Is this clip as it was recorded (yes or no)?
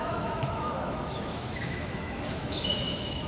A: no